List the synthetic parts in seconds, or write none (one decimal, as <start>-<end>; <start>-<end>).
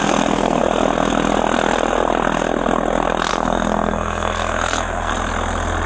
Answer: 0.0-0.6; 3.3-5.1